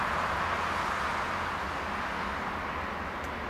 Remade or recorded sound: recorded